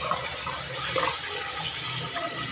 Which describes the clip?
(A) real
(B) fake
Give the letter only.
A